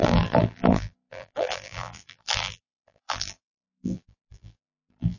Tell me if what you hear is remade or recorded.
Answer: remade